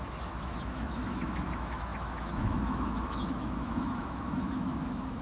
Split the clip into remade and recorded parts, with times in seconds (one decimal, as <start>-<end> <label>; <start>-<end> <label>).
0.0-5.2 remade